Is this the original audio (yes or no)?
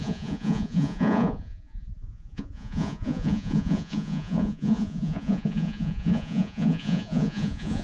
no